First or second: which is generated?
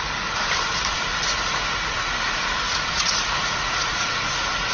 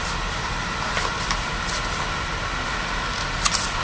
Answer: first